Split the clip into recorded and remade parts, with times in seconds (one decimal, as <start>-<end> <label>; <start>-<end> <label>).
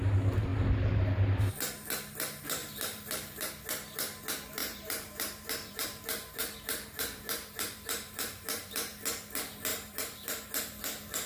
0.0-2.6 recorded; 2.6-3.5 remade; 3.5-4.6 recorded; 4.6-8.7 remade; 8.7-9.7 recorded; 9.7-10.5 remade; 10.5-11.3 recorded